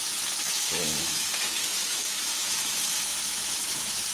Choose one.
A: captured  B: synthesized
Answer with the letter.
B